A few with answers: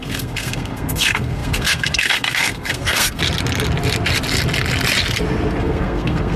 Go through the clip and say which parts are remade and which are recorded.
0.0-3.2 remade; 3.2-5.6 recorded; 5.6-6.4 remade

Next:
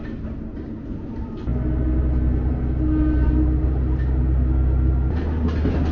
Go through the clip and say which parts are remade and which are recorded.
0.0-5.9 recorded

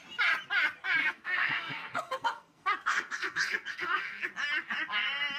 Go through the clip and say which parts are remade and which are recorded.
0.0-1.0 recorded; 1.0-4.2 remade; 4.2-5.4 recorded